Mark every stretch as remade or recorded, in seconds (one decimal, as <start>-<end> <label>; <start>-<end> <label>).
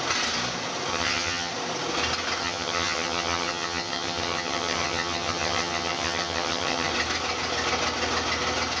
0.0-0.9 recorded; 0.9-1.5 remade; 1.5-2.4 recorded; 2.4-6.9 remade; 6.9-8.8 recorded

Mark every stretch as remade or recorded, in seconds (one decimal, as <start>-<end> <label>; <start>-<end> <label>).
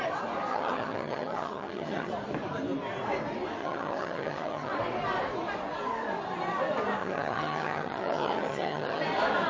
0.0-0.5 recorded; 0.5-2.1 remade; 2.1-3.6 recorded; 3.6-4.7 remade; 4.7-7.0 recorded; 7.0-9.0 remade; 9.0-9.5 recorded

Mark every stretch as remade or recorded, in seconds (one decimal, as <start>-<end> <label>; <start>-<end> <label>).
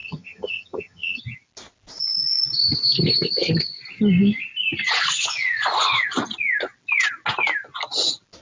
0.0-1.2 remade; 1.2-8.4 recorded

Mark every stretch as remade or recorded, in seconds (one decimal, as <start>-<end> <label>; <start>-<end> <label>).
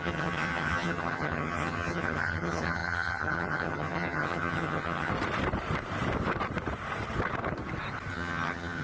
0.0-5.1 remade; 5.1-8.1 recorded; 8.1-8.8 remade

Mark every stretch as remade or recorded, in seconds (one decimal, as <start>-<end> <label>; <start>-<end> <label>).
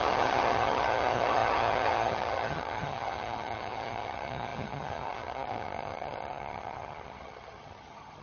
0.0-8.2 remade